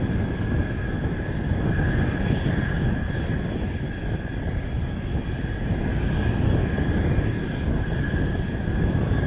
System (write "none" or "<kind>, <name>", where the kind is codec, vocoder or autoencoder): none